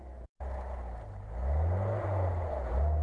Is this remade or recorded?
recorded